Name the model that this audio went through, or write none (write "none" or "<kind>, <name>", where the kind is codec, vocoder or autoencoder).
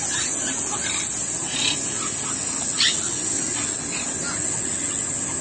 none